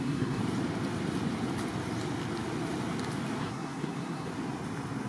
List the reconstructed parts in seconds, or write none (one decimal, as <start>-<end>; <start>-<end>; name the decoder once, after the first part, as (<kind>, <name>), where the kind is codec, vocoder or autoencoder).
0.0-0.4 (codec, SNAC); 3.4-4.3